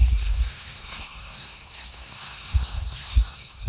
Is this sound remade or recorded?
remade